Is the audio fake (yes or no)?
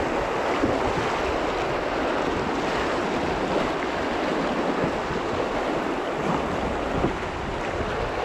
no